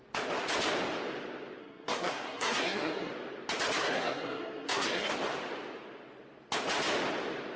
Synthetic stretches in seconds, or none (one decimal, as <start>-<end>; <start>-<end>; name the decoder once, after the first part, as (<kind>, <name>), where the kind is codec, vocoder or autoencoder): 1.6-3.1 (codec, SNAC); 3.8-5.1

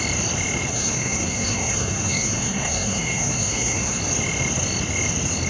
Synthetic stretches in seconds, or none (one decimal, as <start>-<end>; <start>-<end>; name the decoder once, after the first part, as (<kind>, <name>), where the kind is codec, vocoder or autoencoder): 0.7-4.0 (codec, SNAC)

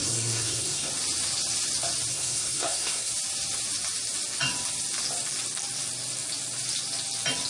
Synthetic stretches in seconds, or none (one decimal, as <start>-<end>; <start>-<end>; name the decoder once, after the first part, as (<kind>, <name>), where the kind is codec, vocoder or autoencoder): 0.0-0.9 (codec, SNAC); 2.1-3.1

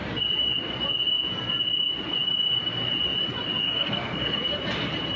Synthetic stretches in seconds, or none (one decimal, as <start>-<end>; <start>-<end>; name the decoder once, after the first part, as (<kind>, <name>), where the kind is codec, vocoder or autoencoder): 3.6-4.4 (codec, SNAC)

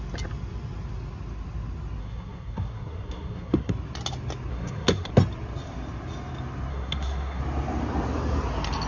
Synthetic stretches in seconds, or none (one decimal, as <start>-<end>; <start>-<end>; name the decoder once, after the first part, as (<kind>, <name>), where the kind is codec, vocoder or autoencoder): 2.0-3.7 (codec, SNAC); 4.5-5.1; 6.7-7.4

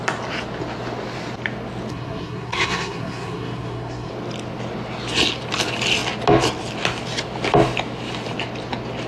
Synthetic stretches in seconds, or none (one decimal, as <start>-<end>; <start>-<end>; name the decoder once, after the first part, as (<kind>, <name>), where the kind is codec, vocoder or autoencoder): 1.9-4.1 (codec, SNAC)